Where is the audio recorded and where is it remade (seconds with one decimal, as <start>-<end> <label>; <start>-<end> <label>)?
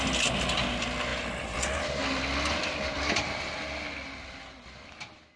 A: 0.0-5.4 recorded